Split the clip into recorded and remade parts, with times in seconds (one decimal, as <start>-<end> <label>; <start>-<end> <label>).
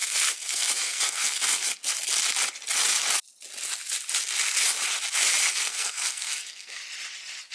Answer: 0.0-1.7 remade; 1.7-5.5 recorded; 5.5-6.8 remade; 6.8-7.5 recorded